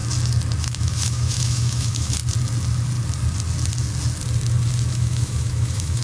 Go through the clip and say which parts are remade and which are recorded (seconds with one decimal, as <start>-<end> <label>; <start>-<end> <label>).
0.0-0.6 recorded; 0.6-2.2 remade; 2.2-4.9 recorded; 4.9-6.0 remade